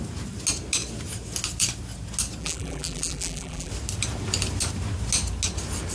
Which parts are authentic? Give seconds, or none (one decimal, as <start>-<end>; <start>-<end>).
0.0-2.4; 3.7-5.9